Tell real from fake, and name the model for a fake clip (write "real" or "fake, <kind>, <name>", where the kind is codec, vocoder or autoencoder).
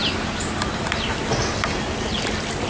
real